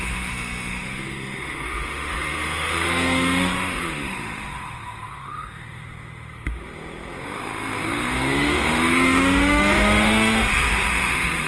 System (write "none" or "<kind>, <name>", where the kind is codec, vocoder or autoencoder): autoencoder, DAC-VAE